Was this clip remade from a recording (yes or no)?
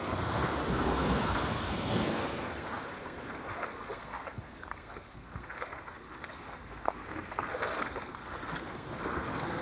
yes